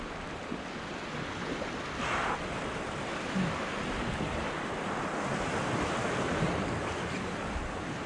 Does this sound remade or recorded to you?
recorded